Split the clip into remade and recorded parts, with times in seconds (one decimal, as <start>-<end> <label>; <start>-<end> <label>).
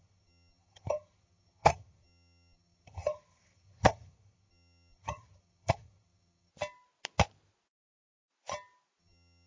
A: 0.0-6.5 remade; 6.5-9.0 recorded; 9.0-9.5 remade